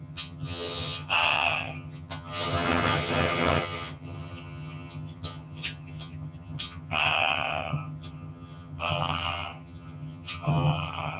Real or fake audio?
fake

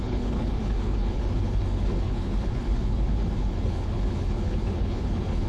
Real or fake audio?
fake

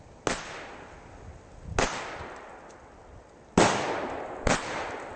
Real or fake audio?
real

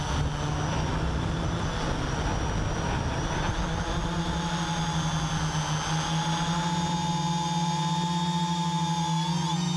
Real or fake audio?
real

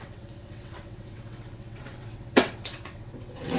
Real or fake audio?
fake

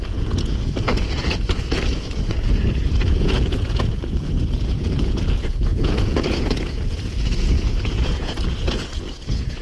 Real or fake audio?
fake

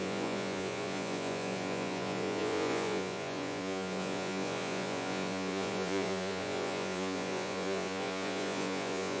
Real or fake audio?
fake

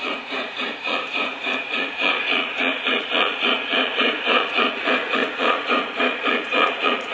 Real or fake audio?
fake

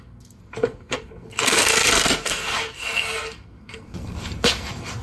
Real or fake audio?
fake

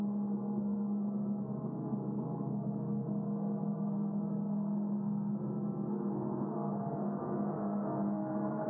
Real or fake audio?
fake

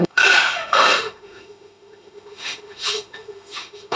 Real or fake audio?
fake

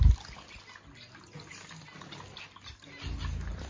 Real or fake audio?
real